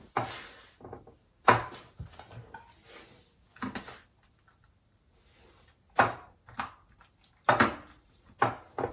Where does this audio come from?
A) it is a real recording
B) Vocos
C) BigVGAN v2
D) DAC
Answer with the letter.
A